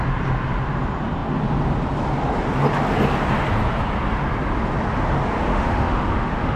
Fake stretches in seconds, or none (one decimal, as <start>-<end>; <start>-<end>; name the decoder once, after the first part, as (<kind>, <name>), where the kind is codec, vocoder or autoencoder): 5.5-6.6 (autoencoder, DAC-VAE)